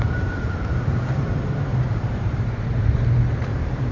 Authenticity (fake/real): fake